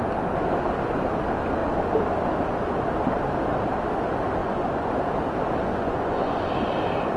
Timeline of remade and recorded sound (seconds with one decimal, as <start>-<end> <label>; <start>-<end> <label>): 0.0-4.4 recorded; 4.4-4.9 remade; 4.9-5.7 recorded; 5.7-6.5 remade; 6.5-7.2 recorded